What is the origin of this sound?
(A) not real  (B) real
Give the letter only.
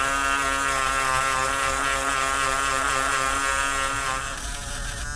B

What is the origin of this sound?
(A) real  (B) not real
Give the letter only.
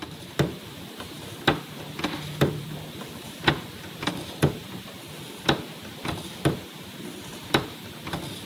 B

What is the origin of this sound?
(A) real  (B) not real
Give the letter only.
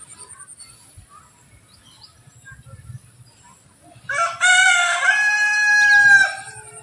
A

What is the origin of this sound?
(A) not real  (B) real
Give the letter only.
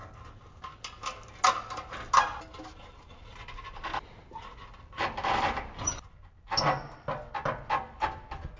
B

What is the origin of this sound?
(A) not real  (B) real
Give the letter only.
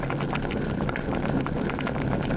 B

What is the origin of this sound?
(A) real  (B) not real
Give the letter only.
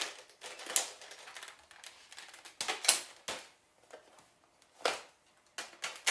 A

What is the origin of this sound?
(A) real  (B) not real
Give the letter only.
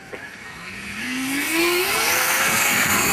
B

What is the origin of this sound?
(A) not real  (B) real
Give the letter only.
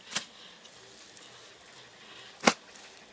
B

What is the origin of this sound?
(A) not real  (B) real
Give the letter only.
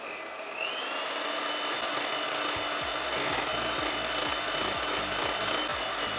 B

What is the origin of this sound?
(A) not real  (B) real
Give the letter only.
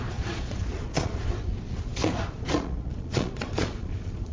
A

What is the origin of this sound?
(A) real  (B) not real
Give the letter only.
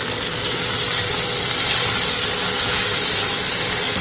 A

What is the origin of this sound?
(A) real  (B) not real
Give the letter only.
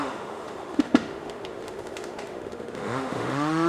B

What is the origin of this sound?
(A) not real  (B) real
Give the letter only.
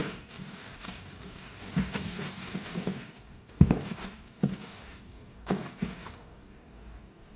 A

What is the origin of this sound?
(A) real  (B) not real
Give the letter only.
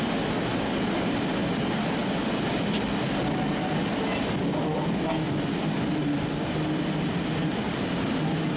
A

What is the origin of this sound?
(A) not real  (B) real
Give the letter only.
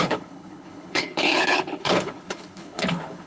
A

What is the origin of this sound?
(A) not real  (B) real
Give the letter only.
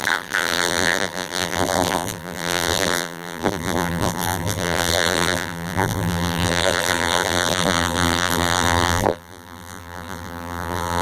A